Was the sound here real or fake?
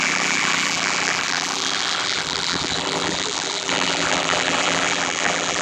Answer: fake